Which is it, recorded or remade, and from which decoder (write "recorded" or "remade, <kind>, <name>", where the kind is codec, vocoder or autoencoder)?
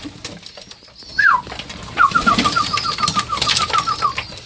recorded